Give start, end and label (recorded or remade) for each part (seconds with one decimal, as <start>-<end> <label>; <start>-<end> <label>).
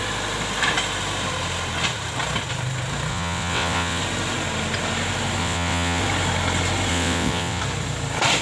0.0-3.1 recorded; 3.1-4.0 remade; 4.0-5.4 recorded; 5.4-6.0 remade; 6.0-6.9 recorded; 6.9-7.6 remade; 7.6-8.4 recorded